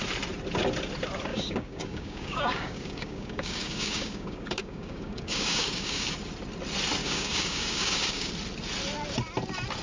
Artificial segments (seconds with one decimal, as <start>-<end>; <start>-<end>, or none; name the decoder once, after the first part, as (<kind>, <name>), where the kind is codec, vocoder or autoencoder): 1.3-6.1 (codec, DAC); 7.0-8.3